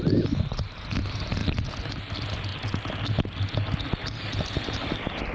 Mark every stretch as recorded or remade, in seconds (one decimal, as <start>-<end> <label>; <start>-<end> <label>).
0.0-5.3 recorded